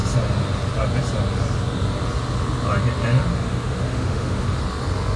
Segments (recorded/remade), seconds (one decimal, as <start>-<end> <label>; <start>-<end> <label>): 0.0-3.3 recorded; 3.3-4.6 remade; 4.6-5.2 recorded